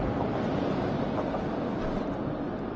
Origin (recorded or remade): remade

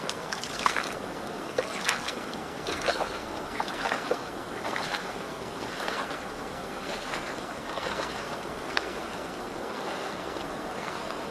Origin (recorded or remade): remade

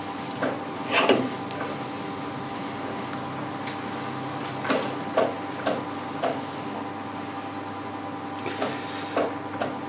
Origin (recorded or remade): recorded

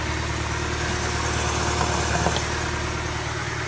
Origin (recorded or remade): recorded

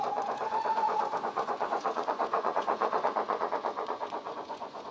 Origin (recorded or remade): remade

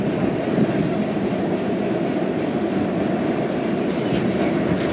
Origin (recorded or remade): recorded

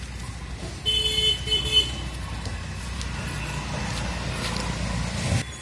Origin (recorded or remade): recorded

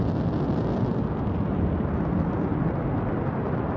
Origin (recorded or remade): recorded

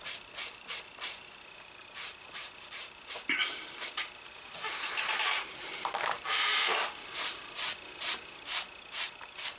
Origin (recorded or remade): remade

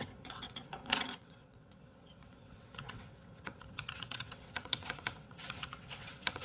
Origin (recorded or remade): remade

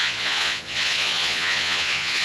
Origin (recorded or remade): remade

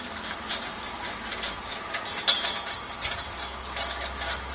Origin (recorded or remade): recorded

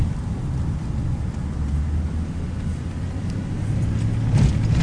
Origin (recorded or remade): recorded